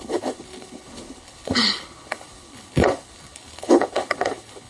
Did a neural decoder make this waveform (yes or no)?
yes